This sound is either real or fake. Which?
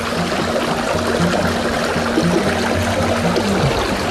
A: real